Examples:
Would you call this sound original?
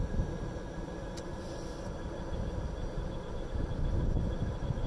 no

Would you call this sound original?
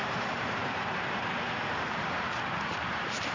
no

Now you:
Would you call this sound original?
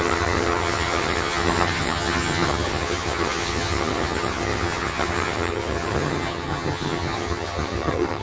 no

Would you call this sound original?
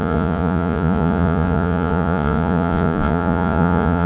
no